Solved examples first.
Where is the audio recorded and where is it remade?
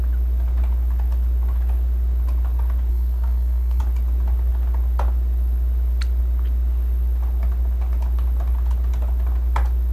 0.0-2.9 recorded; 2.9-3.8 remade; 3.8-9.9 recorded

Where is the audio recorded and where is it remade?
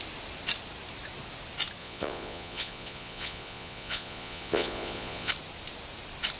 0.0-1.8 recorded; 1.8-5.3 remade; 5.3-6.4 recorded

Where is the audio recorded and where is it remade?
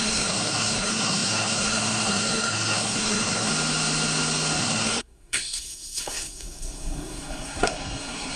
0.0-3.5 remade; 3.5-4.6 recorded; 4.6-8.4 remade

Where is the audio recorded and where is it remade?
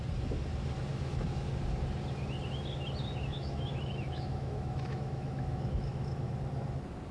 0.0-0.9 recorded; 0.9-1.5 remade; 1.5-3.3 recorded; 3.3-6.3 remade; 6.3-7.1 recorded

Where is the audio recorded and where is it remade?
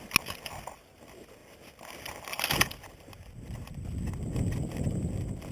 0.0-5.5 recorded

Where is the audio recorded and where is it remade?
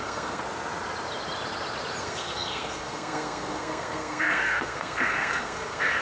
0.0-0.4 remade; 0.4-2.0 recorded; 2.0-6.0 remade